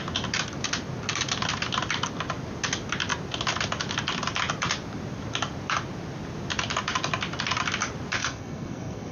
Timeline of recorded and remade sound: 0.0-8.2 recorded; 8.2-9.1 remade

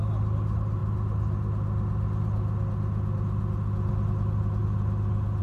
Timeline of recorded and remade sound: 0.0-5.4 recorded

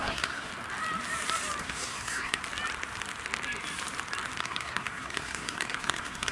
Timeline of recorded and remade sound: 0.0-0.5 remade; 0.5-1.6 recorded; 1.6-2.4 remade; 2.4-4.4 recorded; 4.4-6.3 remade